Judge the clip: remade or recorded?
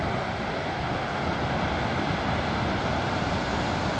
recorded